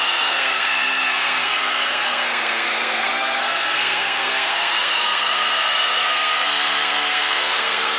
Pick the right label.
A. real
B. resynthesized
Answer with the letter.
B